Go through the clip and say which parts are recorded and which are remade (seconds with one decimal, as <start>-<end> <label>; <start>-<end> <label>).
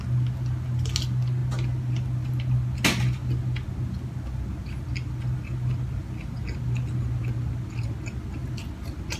0.0-9.2 recorded